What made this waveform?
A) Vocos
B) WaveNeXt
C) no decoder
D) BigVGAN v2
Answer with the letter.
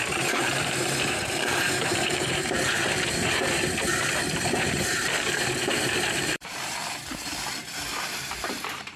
D